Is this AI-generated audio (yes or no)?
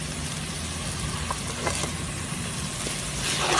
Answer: no